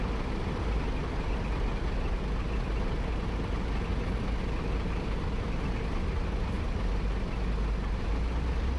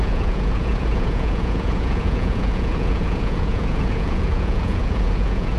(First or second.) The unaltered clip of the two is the first